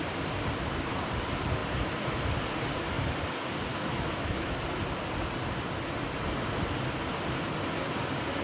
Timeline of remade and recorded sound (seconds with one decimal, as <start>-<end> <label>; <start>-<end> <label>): 0.0-3.7 recorded; 3.7-4.6 remade; 4.6-8.4 recorded